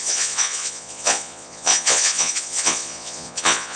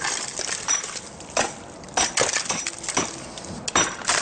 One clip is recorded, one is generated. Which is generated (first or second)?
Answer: first